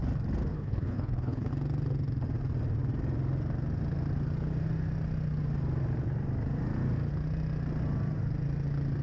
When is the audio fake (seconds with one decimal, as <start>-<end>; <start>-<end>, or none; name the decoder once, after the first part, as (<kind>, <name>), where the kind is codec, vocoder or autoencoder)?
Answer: 0.5-1.5 (codec, HILCodec)